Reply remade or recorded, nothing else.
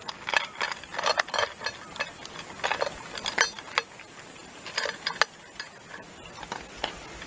recorded